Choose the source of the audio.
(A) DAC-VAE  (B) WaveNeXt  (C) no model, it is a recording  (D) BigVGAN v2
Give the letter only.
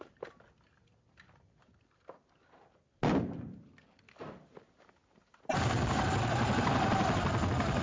D